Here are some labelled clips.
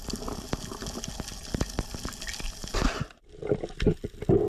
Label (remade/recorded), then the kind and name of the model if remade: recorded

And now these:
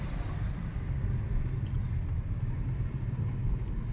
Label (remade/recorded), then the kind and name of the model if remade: recorded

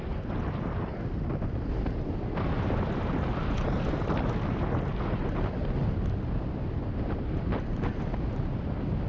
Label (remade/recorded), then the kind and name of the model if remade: recorded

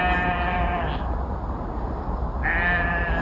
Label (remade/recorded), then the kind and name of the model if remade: recorded